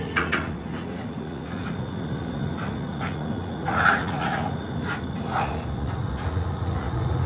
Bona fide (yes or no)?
no